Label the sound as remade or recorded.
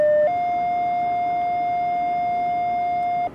recorded